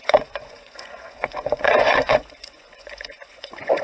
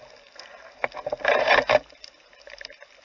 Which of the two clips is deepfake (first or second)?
first